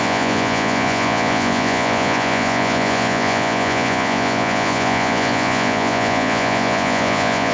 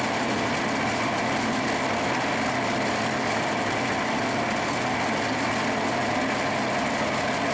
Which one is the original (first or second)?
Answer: second